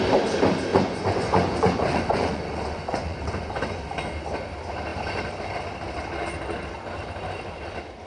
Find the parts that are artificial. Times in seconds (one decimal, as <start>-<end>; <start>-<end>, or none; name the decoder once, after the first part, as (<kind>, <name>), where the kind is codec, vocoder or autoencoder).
0.7-3.2 (vocoder, Vocos)